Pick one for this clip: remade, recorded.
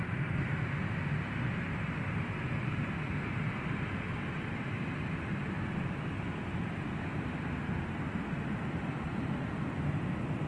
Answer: recorded